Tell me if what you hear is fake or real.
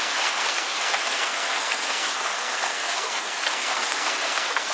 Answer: fake